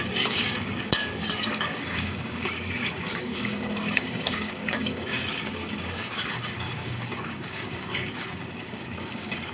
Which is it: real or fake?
fake